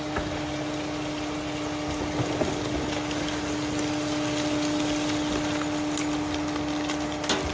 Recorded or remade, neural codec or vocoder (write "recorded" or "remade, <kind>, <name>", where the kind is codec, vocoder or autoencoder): recorded